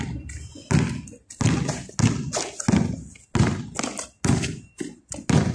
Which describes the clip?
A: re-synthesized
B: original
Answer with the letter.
B